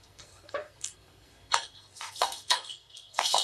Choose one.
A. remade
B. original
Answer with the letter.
A